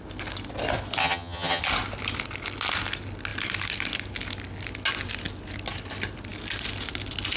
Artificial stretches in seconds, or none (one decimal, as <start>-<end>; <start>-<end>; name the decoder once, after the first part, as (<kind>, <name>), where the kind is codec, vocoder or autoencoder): 1.0-1.6 (vocoder, HiFi-GAN)